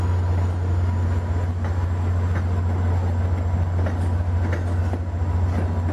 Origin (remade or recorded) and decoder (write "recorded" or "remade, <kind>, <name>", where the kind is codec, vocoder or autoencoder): recorded